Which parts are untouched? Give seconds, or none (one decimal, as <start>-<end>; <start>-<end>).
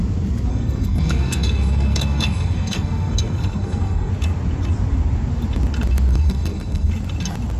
0.0-0.5; 4.1-6.1; 6.9-7.6